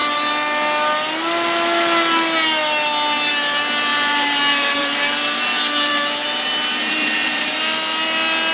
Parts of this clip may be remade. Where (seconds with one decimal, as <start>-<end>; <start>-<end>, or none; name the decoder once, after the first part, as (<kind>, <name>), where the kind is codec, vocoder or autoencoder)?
3.9-7.6 (vocoder, BigVGAN v2)